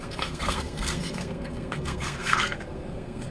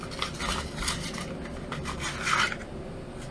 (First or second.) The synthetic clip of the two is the first